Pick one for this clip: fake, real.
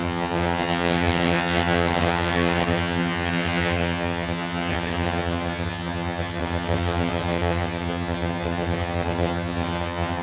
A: fake